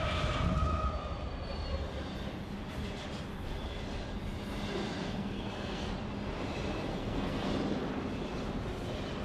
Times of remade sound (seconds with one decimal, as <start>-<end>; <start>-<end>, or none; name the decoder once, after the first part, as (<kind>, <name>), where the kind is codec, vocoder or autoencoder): 5.0-5.9 (codec, SNAC); 6.9-7.5